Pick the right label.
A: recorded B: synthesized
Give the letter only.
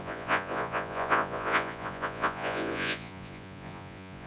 B